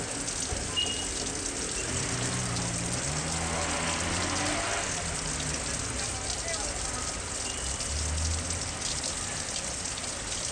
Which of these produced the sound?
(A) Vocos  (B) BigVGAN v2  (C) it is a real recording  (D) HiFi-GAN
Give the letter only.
C